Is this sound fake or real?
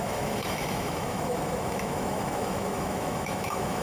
fake